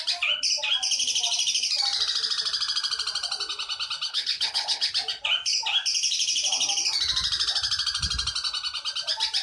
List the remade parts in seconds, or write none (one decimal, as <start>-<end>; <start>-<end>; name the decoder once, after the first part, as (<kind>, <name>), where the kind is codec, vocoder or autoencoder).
4.1-4.9 (codec, HILCodec)